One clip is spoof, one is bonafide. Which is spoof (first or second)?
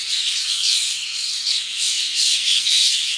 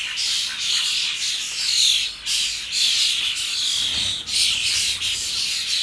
first